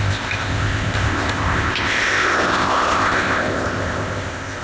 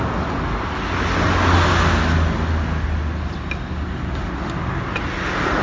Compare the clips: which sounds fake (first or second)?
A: first